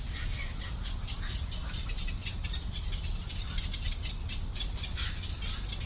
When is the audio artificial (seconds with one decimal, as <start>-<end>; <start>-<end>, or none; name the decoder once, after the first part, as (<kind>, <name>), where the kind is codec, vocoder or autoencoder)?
none